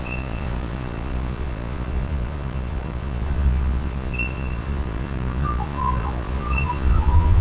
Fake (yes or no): yes